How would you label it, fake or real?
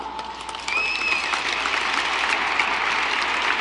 real